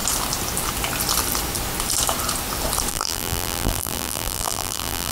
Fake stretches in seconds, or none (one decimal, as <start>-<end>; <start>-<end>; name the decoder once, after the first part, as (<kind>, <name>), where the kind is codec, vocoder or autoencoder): 2.9-5.1 (vocoder, BigVGAN v2)